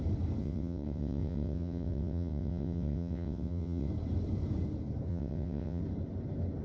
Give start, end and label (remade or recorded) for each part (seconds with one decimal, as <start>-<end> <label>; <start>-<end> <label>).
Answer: 0.0-0.4 recorded; 0.4-3.9 remade; 3.9-5.1 recorded; 5.1-5.8 remade; 5.8-6.6 recorded